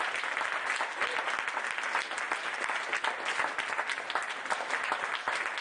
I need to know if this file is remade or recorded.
recorded